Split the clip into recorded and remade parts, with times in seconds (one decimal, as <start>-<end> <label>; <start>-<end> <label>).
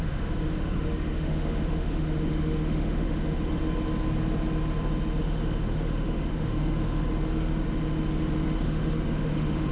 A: 0.0-3.6 remade; 3.6-5.2 recorded; 5.2-7.0 remade; 7.0-8.6 recorded; 8.6-9.7 remade